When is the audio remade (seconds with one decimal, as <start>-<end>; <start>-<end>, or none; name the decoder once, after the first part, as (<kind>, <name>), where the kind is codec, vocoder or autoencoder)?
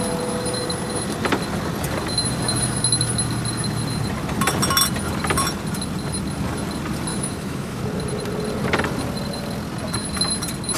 7.1-7.8 (autoencoder, DAC-VAE)